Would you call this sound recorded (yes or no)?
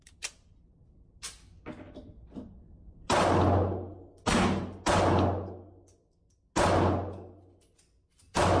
yes